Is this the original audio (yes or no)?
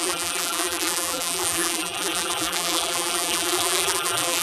no